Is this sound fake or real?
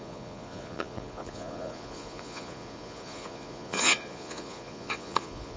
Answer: fake